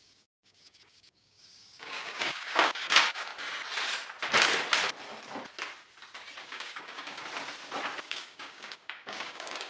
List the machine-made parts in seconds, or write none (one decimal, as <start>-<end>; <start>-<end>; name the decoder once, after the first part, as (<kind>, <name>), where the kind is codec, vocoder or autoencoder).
0.0-3.3 (codec, DAC); 6.4-7.2; 8.0-9.7

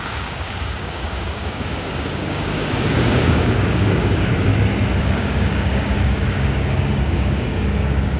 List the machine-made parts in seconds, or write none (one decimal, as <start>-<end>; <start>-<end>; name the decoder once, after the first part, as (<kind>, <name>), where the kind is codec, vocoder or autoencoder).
0.0-4.5 (codec, DAC); 5.0-8.2

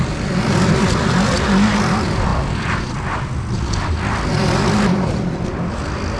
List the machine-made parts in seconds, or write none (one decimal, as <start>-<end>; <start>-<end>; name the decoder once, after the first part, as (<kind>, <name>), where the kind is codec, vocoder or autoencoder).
none

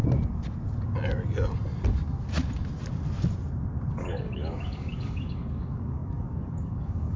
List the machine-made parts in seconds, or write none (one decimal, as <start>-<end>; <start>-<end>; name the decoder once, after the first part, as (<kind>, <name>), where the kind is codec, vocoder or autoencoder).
3.9-7.2 (codec, DAC)

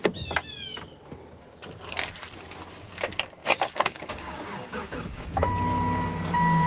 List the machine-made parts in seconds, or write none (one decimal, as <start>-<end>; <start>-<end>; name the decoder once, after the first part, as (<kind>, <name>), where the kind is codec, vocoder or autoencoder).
3.4-5.5 (codec, DAC)

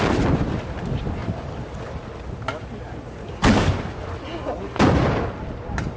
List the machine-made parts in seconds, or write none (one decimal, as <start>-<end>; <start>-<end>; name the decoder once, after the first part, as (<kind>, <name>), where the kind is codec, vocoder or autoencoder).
none